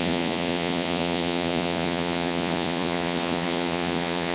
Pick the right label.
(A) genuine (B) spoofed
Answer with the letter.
B